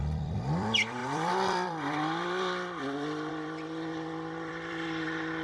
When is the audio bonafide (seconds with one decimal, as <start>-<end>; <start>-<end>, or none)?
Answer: none